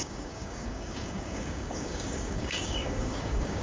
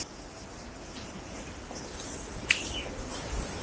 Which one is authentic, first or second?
second